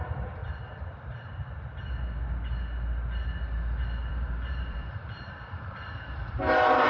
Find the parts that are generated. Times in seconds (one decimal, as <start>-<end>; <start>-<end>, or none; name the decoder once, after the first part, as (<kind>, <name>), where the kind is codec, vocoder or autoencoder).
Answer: 0.0-0.4 (vocoder, BigVGAN v2); 4.1-6.9